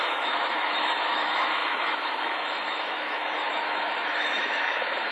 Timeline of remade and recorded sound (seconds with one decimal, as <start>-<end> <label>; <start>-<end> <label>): 0.0-5.1 remade